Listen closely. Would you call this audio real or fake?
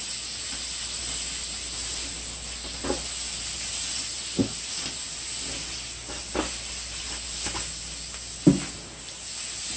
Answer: real